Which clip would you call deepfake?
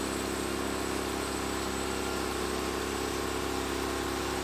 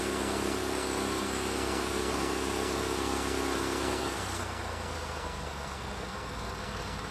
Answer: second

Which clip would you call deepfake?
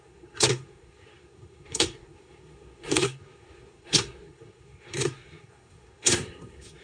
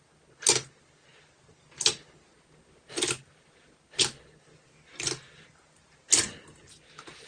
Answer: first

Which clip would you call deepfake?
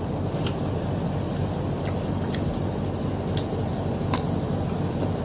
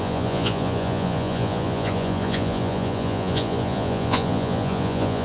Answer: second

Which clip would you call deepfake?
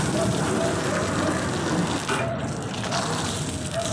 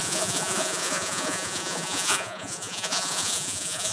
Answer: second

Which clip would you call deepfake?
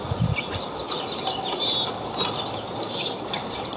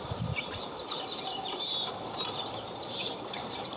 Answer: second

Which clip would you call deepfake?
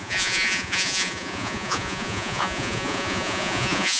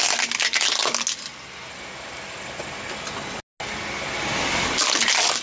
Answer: first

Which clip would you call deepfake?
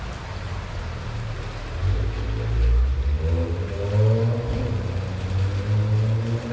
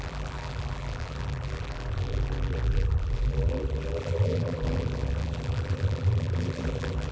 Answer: second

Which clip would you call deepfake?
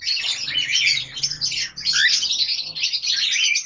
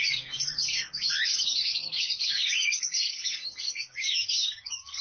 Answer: second